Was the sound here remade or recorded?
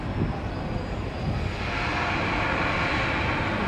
recorded